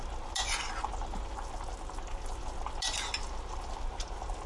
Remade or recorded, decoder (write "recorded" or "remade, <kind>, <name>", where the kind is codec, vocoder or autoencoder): recorded